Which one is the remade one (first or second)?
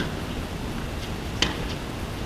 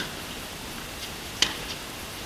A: second